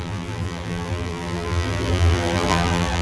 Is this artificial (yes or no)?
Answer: yes